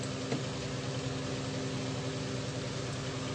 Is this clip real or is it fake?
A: real